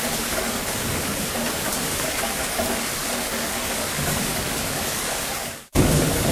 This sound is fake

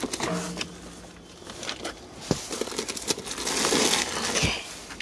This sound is real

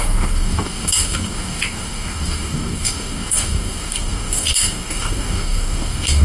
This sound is fake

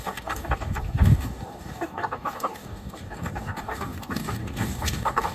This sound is fake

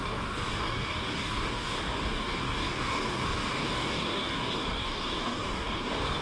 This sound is fake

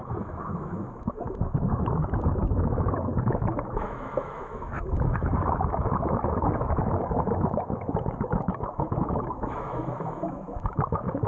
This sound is fake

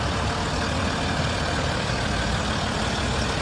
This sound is real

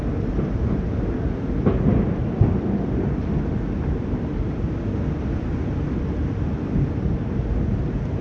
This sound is real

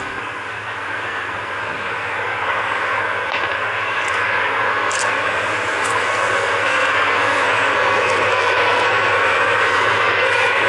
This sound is fake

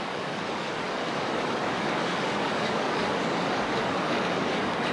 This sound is fake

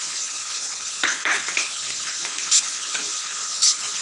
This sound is fake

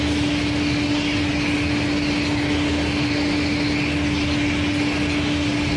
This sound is real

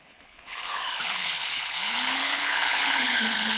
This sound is fake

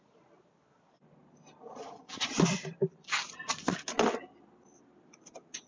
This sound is real